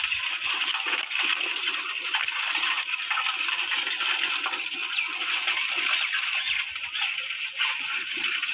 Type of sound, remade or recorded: recorded